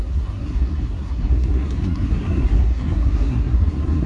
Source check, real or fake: fake